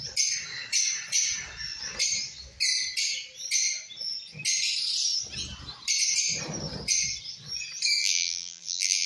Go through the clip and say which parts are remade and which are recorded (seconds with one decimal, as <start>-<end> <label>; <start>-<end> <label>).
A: 0.0-8.0 recorded; 8.0-9.1 remade